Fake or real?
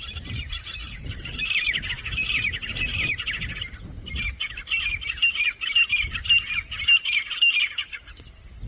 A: real